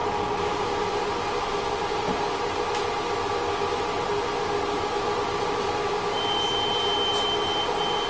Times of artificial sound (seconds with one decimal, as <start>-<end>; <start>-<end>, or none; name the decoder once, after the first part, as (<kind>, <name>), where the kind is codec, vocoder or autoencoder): none